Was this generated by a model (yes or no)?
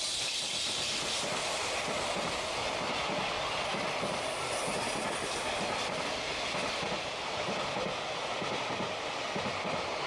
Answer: no